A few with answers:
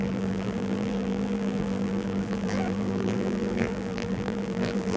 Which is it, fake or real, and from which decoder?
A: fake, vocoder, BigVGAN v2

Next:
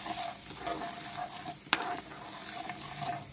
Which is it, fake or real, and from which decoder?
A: real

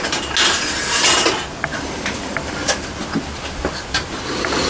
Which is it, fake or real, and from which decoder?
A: real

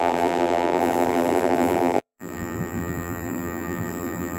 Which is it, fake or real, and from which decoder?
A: fake, vocoder, BigVGAN v2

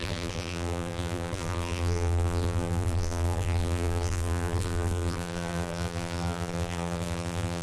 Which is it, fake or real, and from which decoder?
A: fake, vocoder, BigVGAN v2